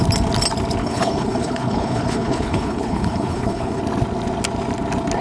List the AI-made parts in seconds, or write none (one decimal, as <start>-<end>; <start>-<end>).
0.8-3.8